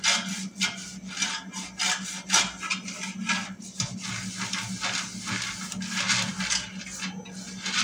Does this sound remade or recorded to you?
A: recorded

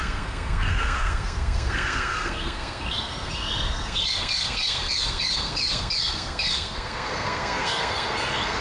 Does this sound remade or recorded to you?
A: remade